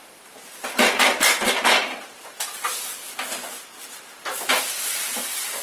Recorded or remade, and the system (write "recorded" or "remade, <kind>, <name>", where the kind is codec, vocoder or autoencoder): recorded